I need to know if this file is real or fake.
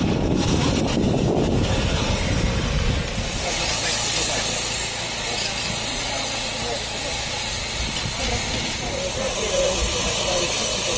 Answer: real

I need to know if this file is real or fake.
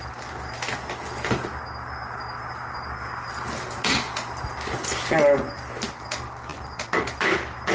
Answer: real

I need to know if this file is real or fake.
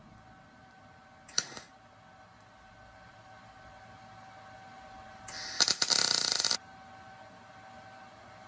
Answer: real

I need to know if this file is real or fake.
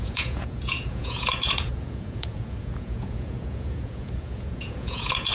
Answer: fake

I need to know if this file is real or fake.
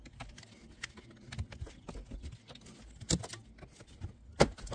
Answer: real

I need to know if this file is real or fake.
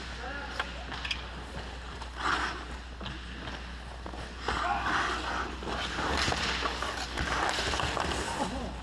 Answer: real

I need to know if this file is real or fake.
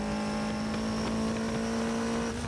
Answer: real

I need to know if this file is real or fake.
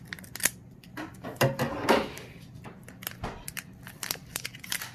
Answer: real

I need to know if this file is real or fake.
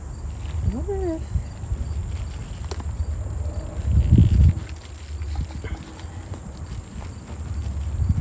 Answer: real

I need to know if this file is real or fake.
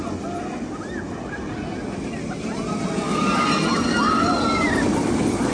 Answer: real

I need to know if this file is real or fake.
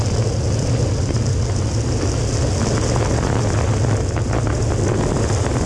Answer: real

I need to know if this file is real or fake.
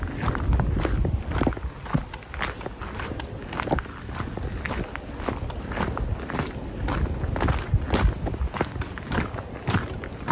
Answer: real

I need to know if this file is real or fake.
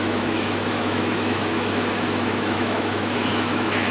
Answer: fake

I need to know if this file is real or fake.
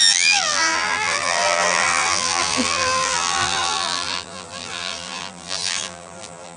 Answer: fake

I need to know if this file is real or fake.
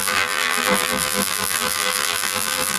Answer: fake